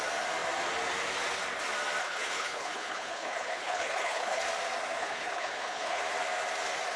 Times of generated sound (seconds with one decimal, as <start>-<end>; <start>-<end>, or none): 2.0-4.4; 5.0-6.0